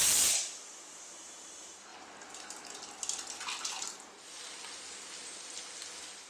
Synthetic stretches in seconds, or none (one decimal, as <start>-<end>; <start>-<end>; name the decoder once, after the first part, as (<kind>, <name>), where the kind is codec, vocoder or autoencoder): none